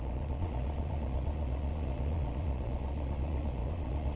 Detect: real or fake fake